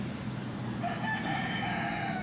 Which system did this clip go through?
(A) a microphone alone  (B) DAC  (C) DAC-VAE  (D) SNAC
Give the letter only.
A